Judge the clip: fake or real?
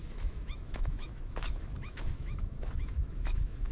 fake